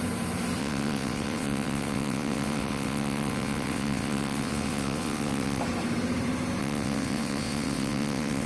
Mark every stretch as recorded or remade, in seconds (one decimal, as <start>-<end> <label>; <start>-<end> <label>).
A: 0.0-0.6 recorded; 0.6-5.6 remade; 5.6-6.6 recorded; 6.6-8.5 remade